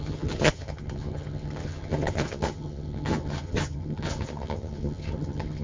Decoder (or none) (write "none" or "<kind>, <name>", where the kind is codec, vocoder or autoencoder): vocoder, HiFi-GAN